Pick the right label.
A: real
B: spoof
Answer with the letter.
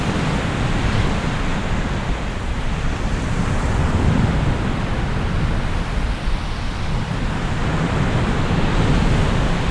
B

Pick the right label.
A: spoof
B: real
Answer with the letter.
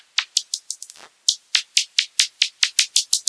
B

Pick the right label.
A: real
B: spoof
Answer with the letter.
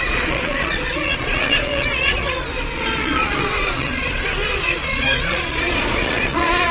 B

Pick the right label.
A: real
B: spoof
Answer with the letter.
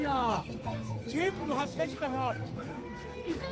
B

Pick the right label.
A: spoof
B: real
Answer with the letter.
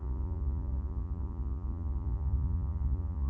A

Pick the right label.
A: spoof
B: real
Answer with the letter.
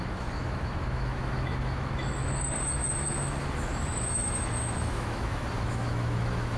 A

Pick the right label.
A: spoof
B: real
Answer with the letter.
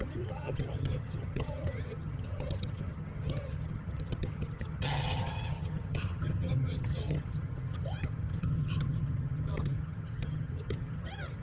A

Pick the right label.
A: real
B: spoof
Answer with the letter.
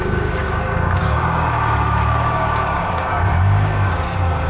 B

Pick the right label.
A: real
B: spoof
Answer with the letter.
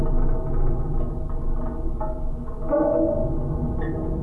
A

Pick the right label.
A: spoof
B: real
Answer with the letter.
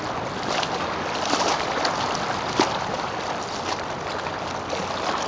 B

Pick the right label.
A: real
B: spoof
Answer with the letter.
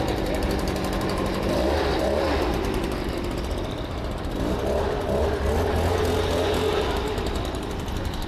A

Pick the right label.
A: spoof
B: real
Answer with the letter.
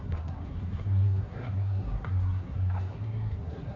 A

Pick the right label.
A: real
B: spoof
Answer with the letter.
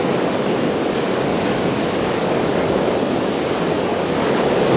B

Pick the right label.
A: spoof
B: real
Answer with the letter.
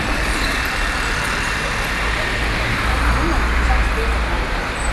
B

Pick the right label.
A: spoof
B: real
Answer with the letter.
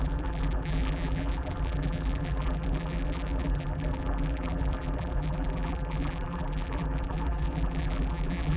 A